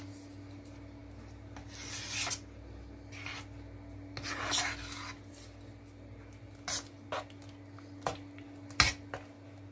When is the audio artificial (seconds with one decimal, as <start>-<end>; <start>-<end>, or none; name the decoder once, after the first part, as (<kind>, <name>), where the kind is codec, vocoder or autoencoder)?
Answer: none